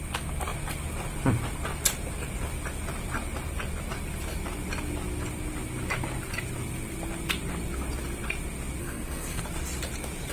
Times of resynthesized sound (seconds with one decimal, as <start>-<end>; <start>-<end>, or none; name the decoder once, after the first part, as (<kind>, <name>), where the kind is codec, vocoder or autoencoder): 8.8-9.4 (codec, SNAC)